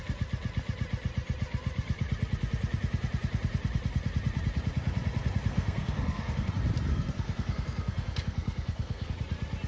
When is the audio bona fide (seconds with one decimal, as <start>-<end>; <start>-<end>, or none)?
0.0-5.5; 6.5-6.9; 9.1-9.7